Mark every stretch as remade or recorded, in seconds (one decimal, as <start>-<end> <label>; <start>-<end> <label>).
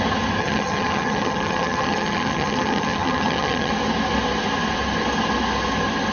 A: 0.0-0.4 recorded; 0.4-3.7 remade; 3.7-6.1 recorded